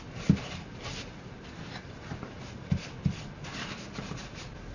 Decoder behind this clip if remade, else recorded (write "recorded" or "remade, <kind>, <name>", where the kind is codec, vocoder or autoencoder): recorded